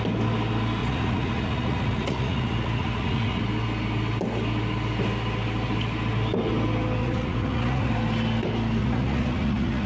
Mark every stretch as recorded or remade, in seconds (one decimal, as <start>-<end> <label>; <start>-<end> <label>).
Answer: 0.0-0.8 recorded; 0.8-3.4 remade; 3.4-7.0 recorded; 7.0-7.9 remade; 7.9-8.8 recorded; 8.8-9.9 remade